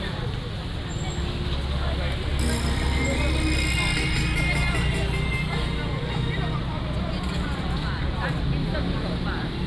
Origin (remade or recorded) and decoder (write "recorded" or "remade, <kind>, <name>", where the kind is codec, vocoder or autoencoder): recorded